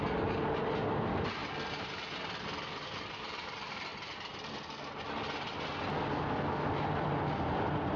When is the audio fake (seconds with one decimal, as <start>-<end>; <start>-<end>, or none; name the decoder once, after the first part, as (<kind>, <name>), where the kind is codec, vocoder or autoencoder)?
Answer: none